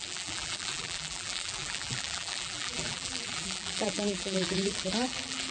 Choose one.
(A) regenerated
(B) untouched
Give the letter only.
A